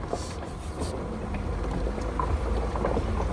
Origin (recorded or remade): recorded